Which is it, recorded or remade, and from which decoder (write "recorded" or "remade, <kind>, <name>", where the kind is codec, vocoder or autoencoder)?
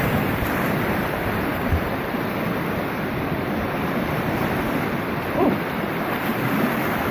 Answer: remade, vocoder, BigVGAN v2